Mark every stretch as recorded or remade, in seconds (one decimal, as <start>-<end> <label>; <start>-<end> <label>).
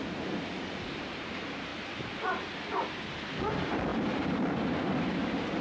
0.0-1.7 remade; 1.7-3.5 recorded; 3.5-5.6 remade